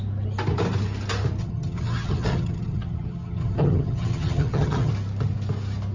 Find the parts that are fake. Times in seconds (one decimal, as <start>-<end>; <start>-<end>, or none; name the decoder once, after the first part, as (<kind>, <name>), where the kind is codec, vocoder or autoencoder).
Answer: 1.4-4.9 (vocoder, HiFi-GAN)